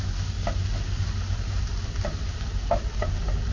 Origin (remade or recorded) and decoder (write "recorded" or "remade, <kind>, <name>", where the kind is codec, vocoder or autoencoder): recorded